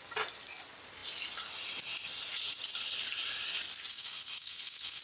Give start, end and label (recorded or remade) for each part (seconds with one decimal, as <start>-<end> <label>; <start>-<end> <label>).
0.0-3.9 recorded; 3.9-5.0 remade